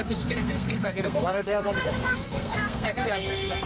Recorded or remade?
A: remade